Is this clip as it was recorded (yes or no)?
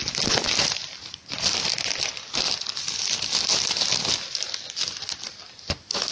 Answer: yes